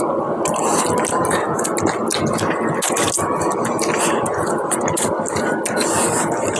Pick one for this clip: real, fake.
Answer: real